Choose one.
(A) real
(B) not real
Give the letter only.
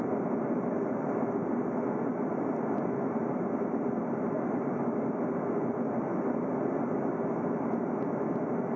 A